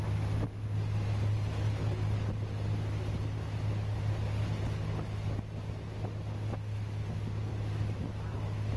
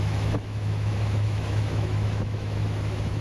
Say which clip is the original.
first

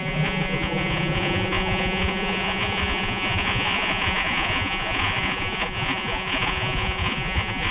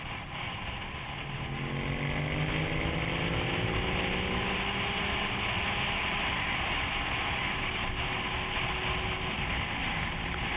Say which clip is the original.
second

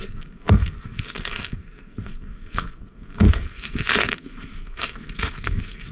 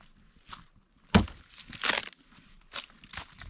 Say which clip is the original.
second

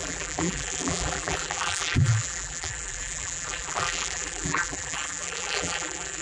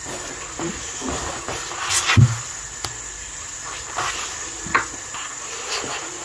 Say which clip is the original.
second